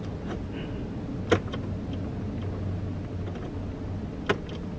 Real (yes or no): yes